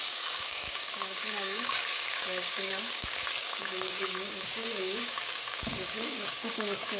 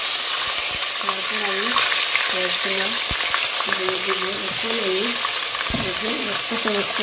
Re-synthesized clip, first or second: first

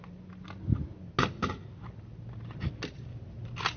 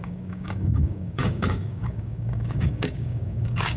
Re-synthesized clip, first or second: second